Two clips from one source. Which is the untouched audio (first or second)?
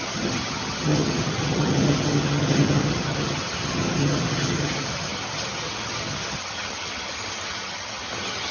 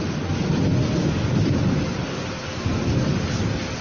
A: second